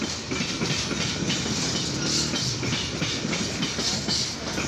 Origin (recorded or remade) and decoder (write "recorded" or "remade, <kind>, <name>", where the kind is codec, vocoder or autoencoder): recorded